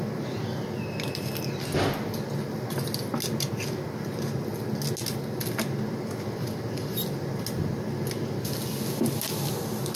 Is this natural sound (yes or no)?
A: yes